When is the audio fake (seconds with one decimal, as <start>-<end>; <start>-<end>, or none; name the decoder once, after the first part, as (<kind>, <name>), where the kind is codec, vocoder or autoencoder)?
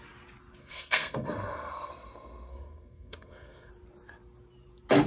0.6-3.7 (codec, SNAC)